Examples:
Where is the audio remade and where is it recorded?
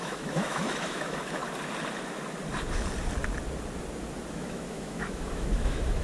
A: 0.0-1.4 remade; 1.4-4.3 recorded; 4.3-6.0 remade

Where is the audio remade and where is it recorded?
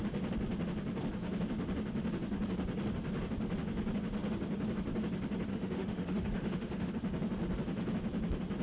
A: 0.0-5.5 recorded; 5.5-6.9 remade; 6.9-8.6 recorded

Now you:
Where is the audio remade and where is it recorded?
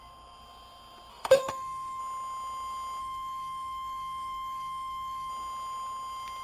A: 0.0-1.1 recorded; 1.1-2.0 remade; 2.0-3.0 recorded; 3.0-5.3 remade; 5.3-6.4 recorded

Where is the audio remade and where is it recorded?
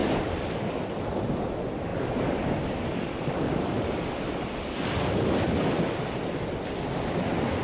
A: 0.0-7.6 recorded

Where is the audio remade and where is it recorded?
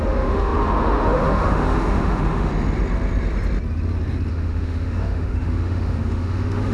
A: 0.0-2.5 remade; 2.5-4.3 recorded; 4.3-6.7 remade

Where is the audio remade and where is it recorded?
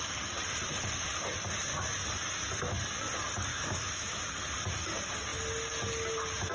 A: 0.0-3.5 recorded; 3.5-4.2 remade; 4.2-6.5 recorded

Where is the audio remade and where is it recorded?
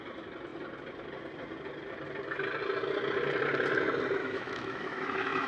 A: 0.0-4.2 recorded; 4.2-5.5 remade